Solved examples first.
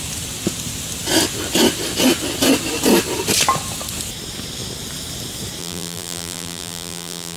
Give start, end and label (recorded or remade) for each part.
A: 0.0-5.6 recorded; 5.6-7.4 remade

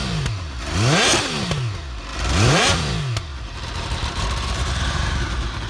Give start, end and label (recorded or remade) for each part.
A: 0.0-2.1 recorded; 2.1-2.9 remade; 2.9-3.3 recorded; 3.3-5.7 remade

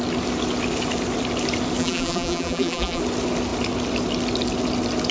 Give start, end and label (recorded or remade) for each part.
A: 0.0-1.8 recorded; 1.8-3.0 remade; 3.0-5.1 recorded

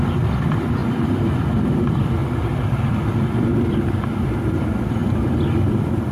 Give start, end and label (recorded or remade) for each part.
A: 0.0-2.2 remade; 2.2-3.7 recorded; 3.7-6.1 remade

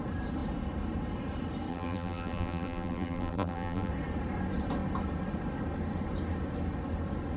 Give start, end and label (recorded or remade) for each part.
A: 0.0-1.7 recorded; 1.7-3.9 remade; 3.9-7.4 recorded

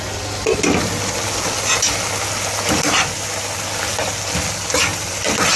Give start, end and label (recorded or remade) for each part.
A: 0.0-4.9 recorded; 4.9-5.6 remade

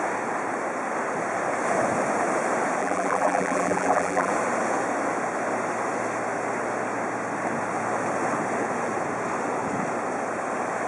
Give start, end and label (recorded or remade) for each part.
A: 0.0-2.8 recorded; 2.8-4.3 remade; 4.3-10.9 recorded

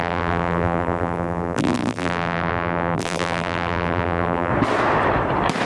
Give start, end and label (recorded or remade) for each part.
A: 0.0-4.5 remade; 4.5-5.7 recorded